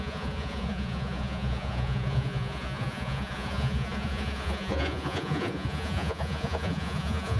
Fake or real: fake